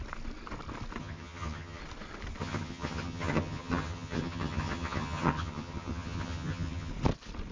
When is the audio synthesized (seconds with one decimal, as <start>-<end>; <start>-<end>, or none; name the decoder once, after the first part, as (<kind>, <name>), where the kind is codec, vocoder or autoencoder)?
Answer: 1.0-1.8 (vocoder, HiFi-GAN); 2.4-6.9